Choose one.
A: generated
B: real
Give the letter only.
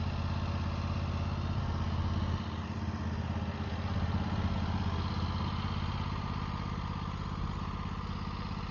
B